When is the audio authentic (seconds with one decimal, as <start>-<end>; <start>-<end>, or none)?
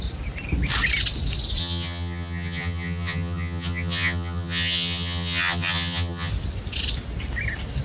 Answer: 0.0-1.6; 6.3-7.8